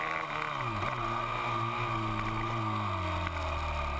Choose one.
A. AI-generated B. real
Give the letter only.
B